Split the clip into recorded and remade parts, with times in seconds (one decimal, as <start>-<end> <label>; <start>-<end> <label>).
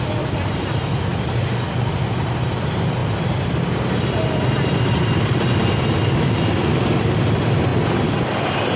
0.0-8.8 recorded